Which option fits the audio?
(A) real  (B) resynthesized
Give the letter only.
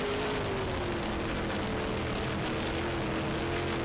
A